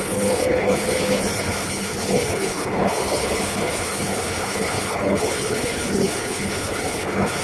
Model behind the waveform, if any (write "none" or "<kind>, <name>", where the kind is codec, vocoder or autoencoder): codec, HILCodec